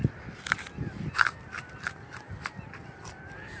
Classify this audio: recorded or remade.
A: remade